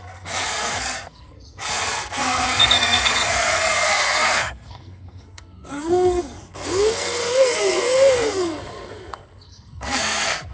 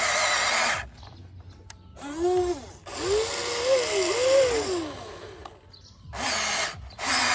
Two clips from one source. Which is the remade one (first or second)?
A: first